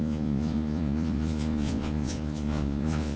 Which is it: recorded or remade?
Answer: remade